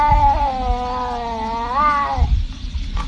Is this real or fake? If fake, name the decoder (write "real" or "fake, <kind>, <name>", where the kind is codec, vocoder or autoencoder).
real